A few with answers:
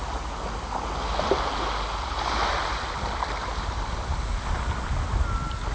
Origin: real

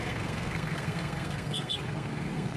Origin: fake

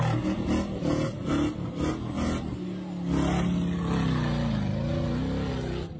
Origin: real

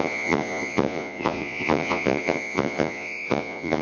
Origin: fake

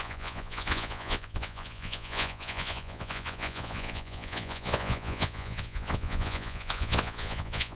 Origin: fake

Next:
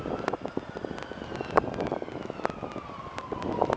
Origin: real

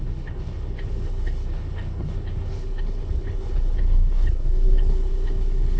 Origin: fake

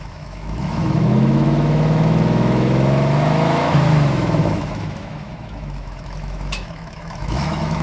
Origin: fake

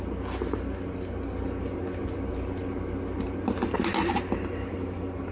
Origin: real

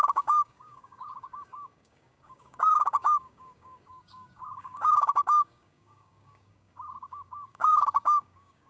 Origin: fake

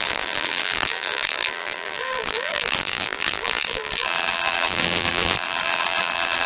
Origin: fake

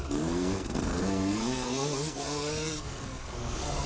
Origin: fake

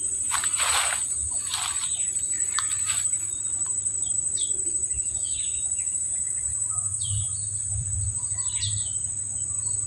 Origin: fake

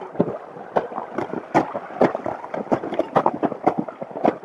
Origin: real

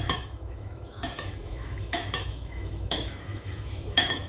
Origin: fake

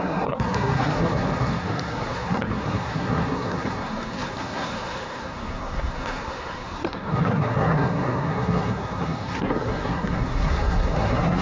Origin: fake